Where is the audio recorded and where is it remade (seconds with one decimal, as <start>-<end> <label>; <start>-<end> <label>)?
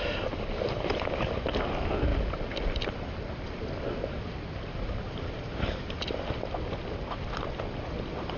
0.0-8.4 recorded